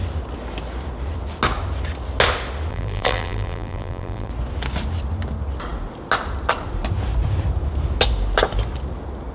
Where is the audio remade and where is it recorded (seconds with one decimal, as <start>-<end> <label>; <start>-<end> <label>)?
0.0-2.7 recorded; 2.7-4.3 remade; 4.3-9.3 recorded